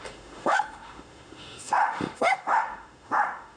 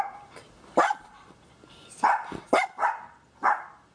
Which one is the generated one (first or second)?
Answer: first